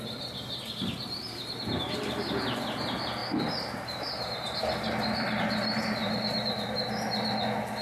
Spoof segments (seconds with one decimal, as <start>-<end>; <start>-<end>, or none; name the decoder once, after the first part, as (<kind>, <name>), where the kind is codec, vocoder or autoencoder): 0.0-7.8 (vocoder, BigVGAN v2)